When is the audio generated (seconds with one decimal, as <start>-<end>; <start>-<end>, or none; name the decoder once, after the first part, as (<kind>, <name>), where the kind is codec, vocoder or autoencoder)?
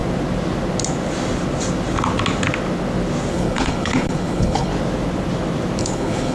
3.3-4.7 (codec, HILCodec); 5.8-6.3